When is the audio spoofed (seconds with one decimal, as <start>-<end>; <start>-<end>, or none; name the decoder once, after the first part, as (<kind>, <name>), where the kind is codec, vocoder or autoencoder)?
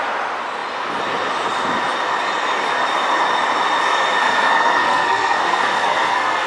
4.2-6.5 (codec, SNAC)